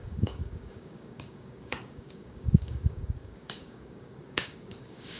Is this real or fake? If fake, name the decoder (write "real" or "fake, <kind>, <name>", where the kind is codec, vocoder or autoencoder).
fake, codec, DAC